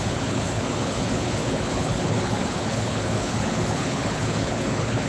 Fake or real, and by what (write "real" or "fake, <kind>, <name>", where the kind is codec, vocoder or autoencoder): fake, codec, HILCodec